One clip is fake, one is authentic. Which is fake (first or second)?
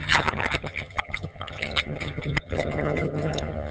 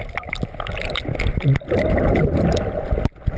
first